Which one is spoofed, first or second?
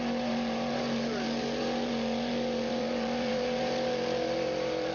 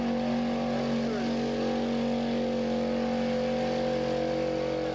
first